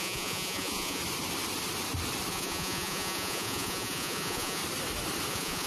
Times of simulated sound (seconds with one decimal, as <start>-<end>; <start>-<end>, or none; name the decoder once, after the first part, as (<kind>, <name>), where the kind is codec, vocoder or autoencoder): 0.0-1.0 (vocoder, Vocos); 2.3-4.6; 5.3-5.7